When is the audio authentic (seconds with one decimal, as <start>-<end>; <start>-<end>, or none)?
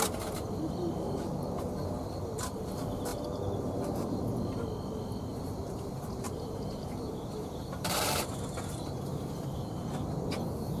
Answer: 0.0-5.3; 9.9-10.8